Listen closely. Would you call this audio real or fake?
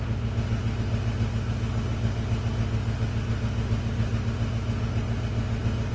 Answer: real